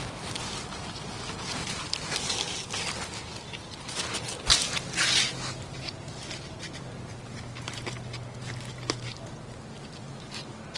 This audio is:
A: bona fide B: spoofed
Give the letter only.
A